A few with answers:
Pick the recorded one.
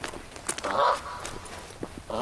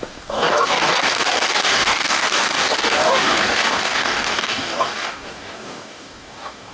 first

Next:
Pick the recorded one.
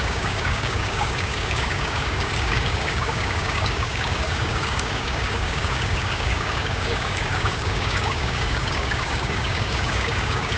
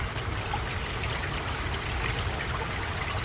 second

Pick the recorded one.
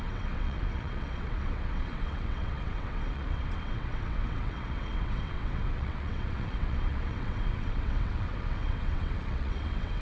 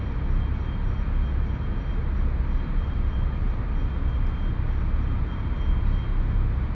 second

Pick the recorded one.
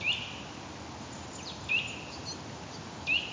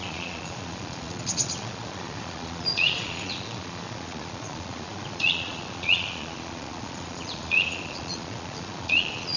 first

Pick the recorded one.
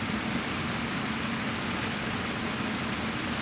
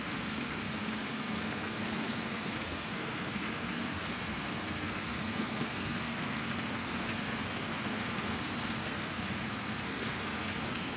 first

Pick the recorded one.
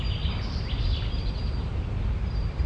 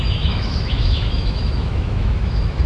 first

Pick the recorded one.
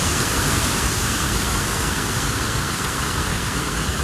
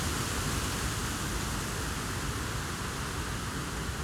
second